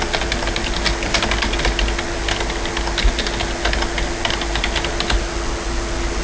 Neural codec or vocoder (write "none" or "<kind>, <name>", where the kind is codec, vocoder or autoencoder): none